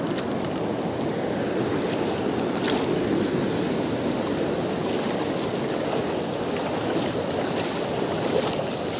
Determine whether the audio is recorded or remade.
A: recorded